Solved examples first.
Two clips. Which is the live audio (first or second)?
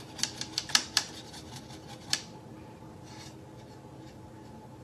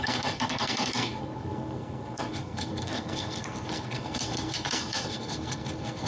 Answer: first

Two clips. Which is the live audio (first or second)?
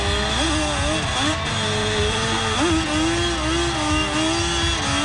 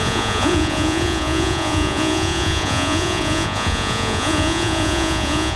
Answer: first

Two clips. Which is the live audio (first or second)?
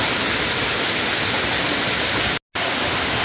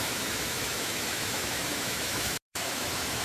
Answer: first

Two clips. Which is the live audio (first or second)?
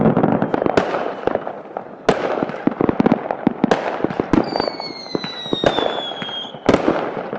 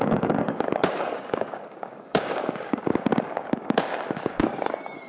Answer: first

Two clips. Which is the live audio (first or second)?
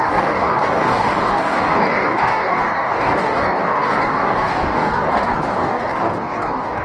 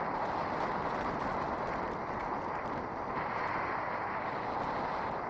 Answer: second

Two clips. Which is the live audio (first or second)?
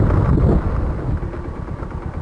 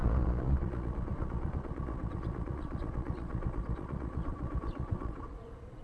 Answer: first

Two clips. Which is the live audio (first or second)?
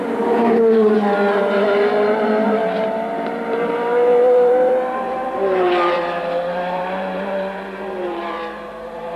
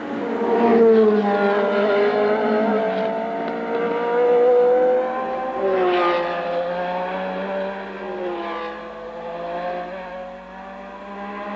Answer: second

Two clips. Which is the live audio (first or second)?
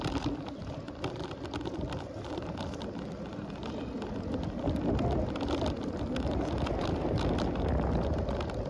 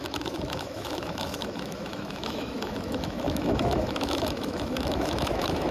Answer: first